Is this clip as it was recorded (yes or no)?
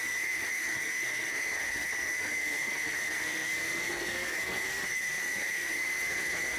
no